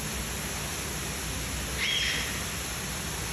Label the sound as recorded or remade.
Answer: recorded